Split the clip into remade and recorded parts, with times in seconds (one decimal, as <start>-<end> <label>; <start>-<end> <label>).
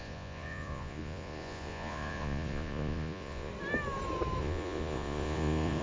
0.0-3.5 remade; 3.5-4.4 recorded; 4.4-5.8 remade